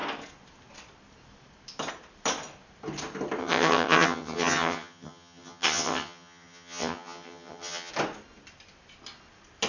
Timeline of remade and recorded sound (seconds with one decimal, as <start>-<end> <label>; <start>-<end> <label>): 0.0-3.4 recorded; 3.4-7.9 remade; 7.9-9.7 recorded